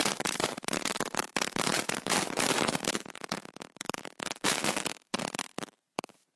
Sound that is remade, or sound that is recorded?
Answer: remade